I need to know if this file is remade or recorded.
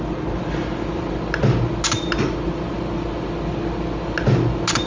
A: recorded